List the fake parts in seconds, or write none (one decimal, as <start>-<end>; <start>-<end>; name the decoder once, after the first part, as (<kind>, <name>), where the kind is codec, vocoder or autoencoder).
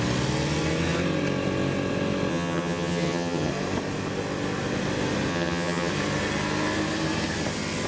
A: 2.3-3.5 (vocoder, HiFi-GAN); 5.3-5.9